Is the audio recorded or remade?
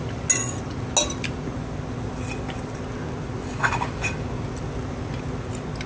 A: recorded